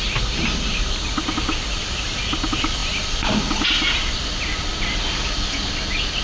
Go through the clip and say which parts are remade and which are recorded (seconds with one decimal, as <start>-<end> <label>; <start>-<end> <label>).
0.0-6.2 recorded